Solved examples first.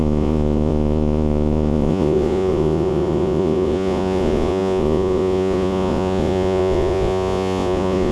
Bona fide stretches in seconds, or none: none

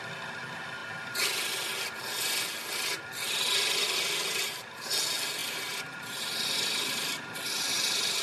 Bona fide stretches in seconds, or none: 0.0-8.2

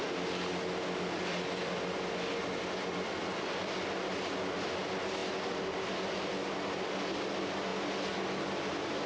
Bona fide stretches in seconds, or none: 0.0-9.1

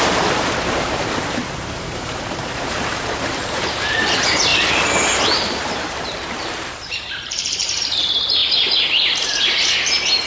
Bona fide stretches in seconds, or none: 4.5-5.2; 8.4-9.3

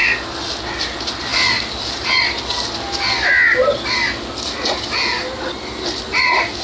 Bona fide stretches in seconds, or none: 0.0-6.6

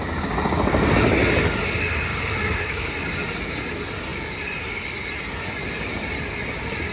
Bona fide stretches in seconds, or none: 0.0-2.1; 2.9-6.9

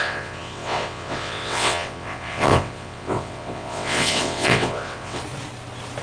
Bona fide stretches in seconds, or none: 5.2-6.0